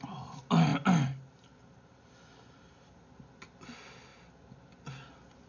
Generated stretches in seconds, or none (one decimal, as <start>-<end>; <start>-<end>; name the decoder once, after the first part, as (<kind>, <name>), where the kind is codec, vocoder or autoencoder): none